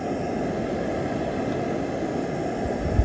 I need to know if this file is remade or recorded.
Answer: recorded